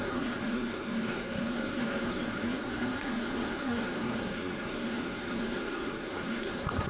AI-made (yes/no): yes